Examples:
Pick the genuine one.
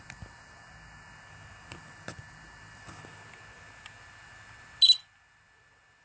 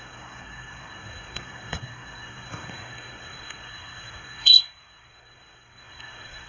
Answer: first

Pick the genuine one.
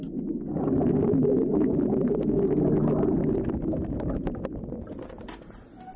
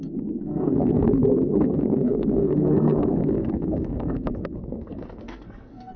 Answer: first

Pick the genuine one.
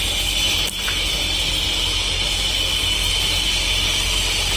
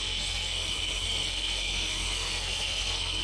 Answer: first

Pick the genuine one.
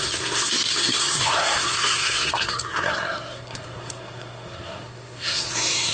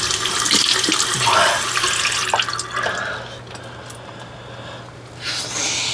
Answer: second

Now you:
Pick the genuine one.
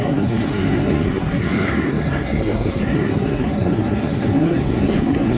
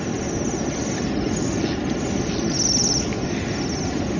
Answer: second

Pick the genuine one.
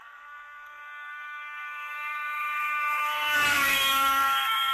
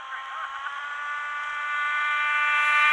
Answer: second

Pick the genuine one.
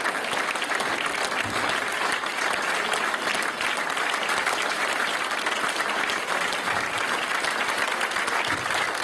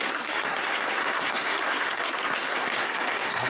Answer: first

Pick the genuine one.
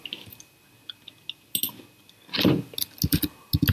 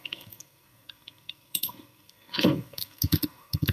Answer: first